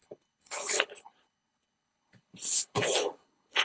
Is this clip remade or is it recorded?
remade